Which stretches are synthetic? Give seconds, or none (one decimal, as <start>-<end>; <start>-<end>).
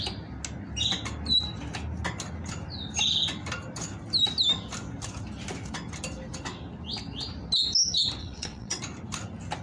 8.2-8.8